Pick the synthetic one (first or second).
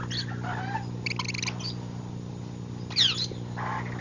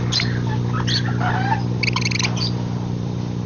second